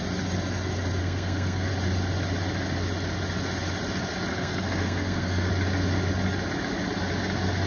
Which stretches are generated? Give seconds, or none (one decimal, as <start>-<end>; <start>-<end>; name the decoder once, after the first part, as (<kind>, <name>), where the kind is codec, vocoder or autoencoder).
1.0-1.7 (codec, SNAC); 4.3-5.5